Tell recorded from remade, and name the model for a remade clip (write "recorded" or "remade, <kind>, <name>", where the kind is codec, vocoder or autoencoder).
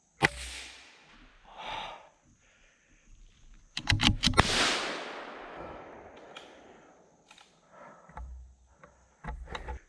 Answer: recorded